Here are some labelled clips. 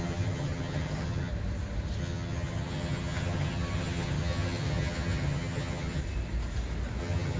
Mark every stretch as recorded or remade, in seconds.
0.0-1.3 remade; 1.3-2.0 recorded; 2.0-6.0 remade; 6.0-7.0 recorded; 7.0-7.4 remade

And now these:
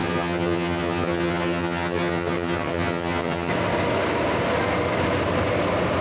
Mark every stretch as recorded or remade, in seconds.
0.0-3.5 remade; 3.5-6.0 recorded

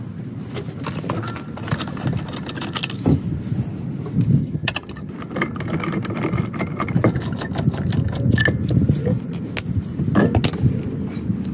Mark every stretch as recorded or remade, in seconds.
0.0-4.4 recorded; 4.4-5.1 remade; 5.1-11.5 recorded

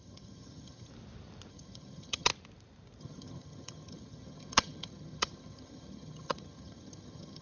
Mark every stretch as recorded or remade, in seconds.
0.0-0.9 remade; 0.9-1.5 recorded; 1.5-2.3 remade; 2.3-3.0 recorded; 3.0-7.4 remade

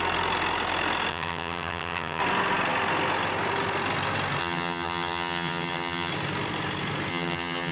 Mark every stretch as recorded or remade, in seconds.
0.0-1.1 recorded; 1.1-2.2 remade; 2.2-4.4 recorded; 4.4-6.1 remade; 6.1-7.1 recorded; 7.1-7.7 remade

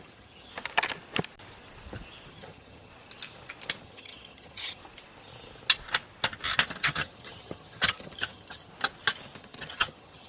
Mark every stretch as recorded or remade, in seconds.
0.0-0.5 remade; 0.5-2.3 recorded; 2.3-2.9 remade; 2.9-3.8 recorded; 3.8-4.8 remade; 4.8-6.8 recorded; 6.8-8.7 remade; 8.7-9.4 recorded; 9.4-10.3 remade

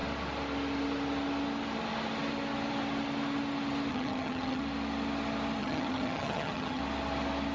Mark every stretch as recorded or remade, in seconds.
0.0-3.9 recorded; 3.9-4.6 remade; 4.6-5.6 recorded; 5.6-6.8 remade; 6.8-7.5 recorded